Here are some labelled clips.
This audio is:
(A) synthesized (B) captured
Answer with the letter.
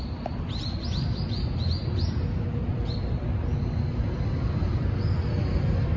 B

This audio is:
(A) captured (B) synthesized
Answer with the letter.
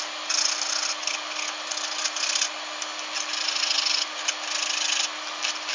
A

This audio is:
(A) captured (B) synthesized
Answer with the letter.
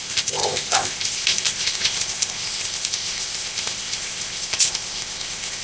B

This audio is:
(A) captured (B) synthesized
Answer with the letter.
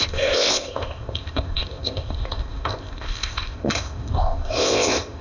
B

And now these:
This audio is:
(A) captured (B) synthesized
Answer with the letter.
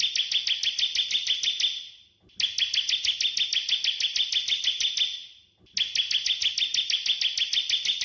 A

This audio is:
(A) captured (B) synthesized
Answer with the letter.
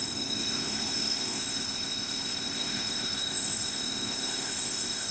B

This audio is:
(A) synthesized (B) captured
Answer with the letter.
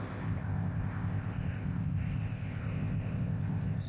A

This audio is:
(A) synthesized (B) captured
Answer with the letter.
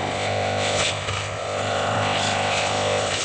A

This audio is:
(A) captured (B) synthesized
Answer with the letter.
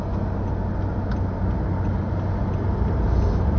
A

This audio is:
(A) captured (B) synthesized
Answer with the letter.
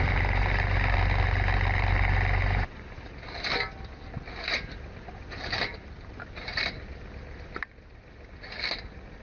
A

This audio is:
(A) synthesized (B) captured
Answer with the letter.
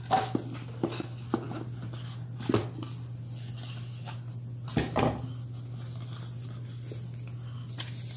B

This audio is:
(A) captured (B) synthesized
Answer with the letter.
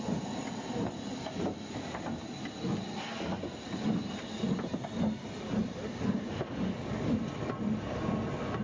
A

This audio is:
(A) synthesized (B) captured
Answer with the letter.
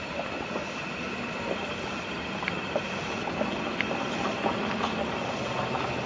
B